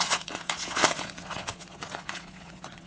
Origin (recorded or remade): remade